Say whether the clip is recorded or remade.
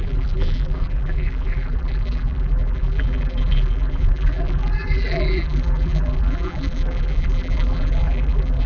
remade